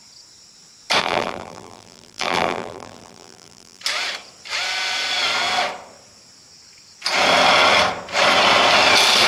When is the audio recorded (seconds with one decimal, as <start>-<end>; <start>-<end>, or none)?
0.0-1.0; 3.8-9.3